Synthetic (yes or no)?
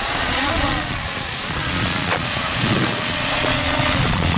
yes